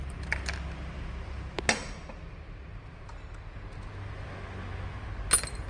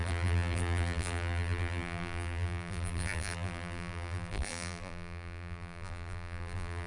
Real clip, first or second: first